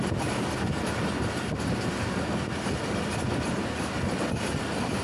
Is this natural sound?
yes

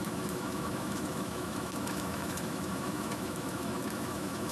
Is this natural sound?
no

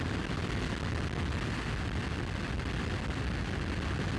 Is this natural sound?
yes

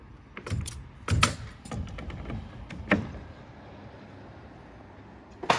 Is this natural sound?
yes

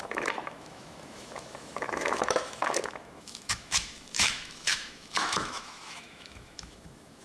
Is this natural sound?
no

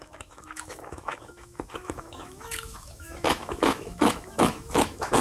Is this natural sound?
no